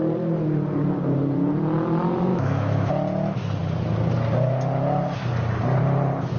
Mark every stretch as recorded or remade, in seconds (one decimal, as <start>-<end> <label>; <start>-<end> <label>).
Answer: 0.0-2.3 recorded; 2.3-2.9 remade; 2.9-6.4 recorded